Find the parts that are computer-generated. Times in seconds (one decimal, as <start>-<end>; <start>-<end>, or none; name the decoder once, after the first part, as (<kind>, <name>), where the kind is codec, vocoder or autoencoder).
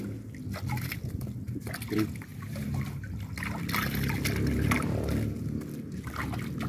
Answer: 2.3-3.3 (vocoder, BigVGAN v2)